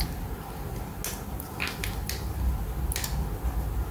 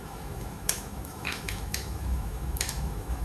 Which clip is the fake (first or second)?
second